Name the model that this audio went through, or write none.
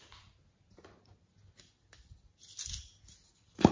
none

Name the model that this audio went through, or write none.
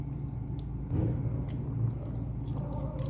none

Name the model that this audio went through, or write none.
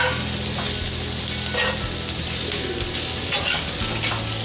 none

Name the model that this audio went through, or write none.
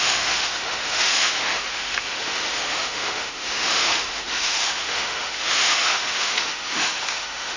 autoencoder, DAC-VAE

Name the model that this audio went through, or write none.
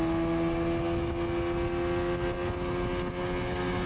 none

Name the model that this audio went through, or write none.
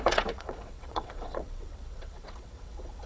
vocoder, WaveNeXt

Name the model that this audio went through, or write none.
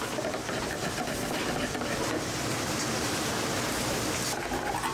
none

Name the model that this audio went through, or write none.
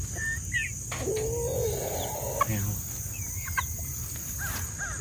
none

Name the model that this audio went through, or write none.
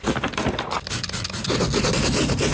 none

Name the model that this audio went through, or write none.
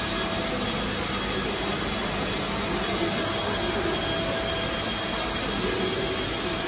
none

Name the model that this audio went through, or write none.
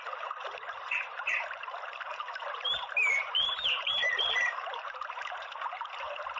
vocoder, BigVGAN v2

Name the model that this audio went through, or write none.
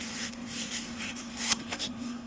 codec, SNAC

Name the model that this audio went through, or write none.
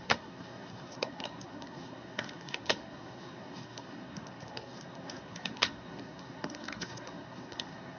codec, SNAC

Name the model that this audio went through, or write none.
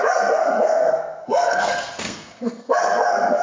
codec, SNAC